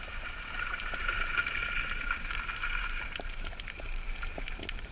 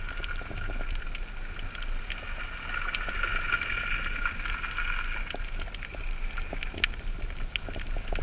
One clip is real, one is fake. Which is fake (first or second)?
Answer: first